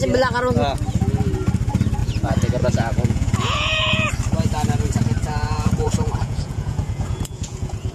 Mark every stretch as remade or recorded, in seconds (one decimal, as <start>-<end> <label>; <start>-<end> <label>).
0.0-2.0 recorded; 2.0-4.1 remade; 4.1-5.2 recorded; 5.2-7.9 remade